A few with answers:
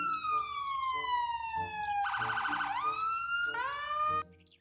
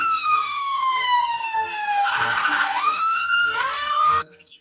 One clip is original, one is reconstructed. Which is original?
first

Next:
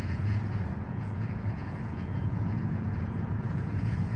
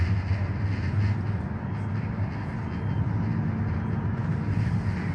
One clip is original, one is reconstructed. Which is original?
second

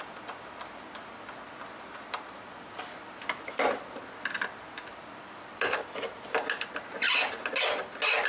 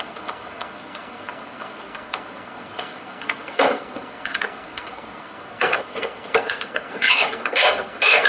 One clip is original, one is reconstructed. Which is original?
first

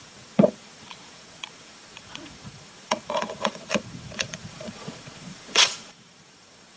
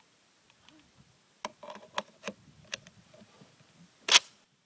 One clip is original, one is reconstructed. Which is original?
second